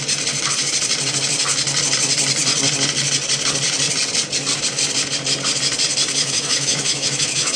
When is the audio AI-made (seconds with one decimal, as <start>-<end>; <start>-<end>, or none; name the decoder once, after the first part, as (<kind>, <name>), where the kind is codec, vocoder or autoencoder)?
6.2-7.6 (autoencoder, DAC-VAE)

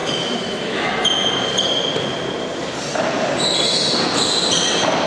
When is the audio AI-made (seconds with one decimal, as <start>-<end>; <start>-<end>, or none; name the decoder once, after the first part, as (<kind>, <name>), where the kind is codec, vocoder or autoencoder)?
0.0-0.9 (autoencoder, DAC-VAE)

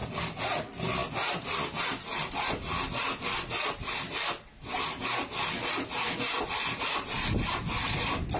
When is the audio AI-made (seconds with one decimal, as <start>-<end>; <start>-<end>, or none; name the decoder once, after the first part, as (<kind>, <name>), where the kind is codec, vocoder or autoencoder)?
none

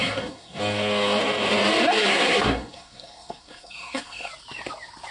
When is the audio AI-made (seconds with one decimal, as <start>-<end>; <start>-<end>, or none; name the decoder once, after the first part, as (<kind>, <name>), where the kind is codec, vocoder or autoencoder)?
0.0-0.6 (codec, SNAC); 2.0-4.3

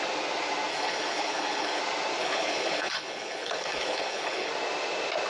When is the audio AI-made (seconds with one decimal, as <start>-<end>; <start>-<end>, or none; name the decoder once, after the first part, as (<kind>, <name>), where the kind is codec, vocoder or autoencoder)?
0.7-1.8 (codec, HILCodec); 2.2-4.5

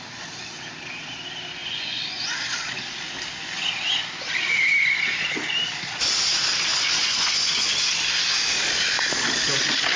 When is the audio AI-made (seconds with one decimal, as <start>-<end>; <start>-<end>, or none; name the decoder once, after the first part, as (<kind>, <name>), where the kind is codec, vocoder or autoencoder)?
1.6-2.8 (vocoder, Vocos); 6.7-7.8

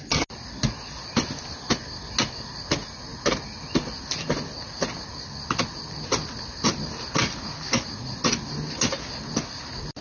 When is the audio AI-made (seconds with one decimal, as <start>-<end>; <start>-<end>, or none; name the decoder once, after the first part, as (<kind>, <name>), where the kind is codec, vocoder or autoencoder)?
none